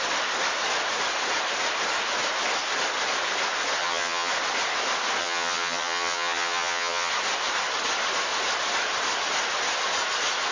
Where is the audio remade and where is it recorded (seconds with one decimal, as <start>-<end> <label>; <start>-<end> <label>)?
0.0-3.8 recorded; 3.8-4.3 remade; 4.3-5.2 recorded; 5.2-7.1 remade; 7.1-10.5 recorded